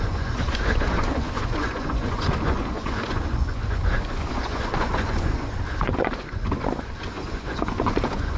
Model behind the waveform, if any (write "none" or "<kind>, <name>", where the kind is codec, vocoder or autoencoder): vocoder, Vocos